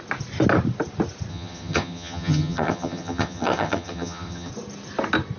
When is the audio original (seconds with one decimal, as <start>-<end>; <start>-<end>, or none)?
0.0-1.3; 4.5-5.4